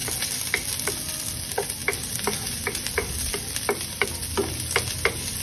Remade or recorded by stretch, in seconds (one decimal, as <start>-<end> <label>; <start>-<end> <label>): 0.0-5.4 recorded